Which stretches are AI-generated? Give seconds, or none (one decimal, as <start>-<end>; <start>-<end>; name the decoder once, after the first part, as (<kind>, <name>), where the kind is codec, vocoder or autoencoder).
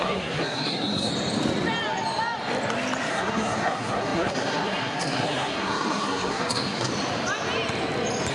0.0-1.1 (codec, SNAC); 3.1-6.9